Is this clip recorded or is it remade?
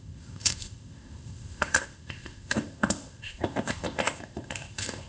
remade